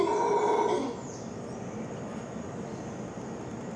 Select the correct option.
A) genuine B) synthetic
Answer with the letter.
A